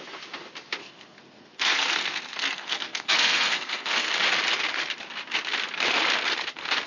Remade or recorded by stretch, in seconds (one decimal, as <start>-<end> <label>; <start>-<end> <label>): 0.0-0.8 recorded; 0.8-4.1 remade; 4.1-6.9 recorded